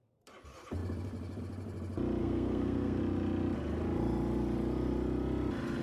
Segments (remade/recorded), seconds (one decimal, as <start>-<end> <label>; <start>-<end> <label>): 0.0-2.2 recorded; 2.2-3.0 remade; 3.0-5.8 recorded